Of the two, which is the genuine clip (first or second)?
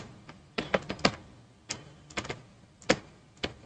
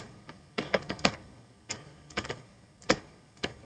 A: first